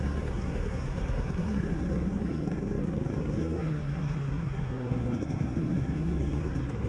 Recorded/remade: remade